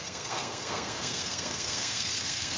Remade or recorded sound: remade